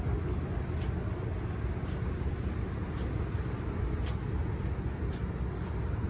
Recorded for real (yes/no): yes